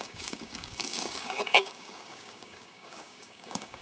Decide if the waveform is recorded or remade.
remade